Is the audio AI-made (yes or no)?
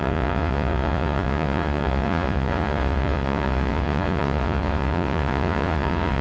yes